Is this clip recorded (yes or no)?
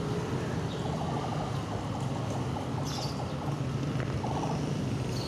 yes